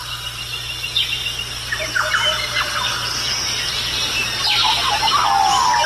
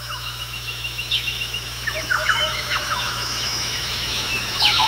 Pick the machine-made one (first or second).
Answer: second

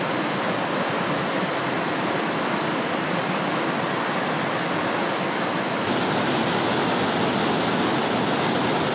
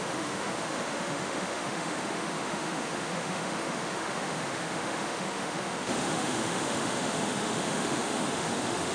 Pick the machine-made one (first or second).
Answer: second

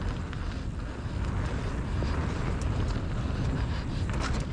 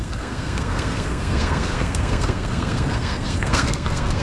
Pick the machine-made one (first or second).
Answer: second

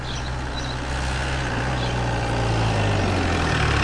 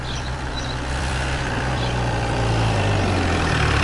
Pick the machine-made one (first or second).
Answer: second